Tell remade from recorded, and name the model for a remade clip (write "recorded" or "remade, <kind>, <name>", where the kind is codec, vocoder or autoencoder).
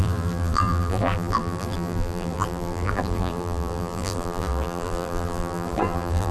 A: remade, vocoder, BigVGAN v2